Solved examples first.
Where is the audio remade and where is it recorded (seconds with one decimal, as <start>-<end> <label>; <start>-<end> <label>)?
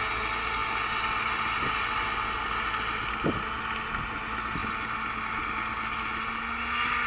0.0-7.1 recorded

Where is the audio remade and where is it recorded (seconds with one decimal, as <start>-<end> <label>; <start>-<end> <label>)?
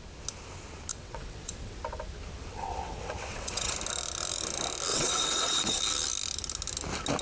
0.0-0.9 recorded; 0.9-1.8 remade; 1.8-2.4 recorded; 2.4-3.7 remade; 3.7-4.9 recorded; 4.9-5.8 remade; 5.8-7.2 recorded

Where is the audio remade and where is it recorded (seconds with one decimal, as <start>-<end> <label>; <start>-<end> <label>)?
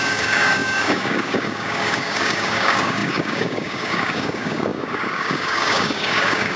0.0-6.6 remade